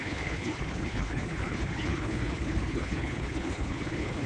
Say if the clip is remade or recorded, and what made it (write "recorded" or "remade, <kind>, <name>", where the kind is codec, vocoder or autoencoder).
remade, codec, HILCodec